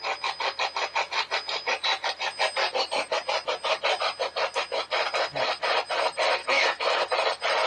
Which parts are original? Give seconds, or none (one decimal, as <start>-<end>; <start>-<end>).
0.0-6.4; 7.1-7.7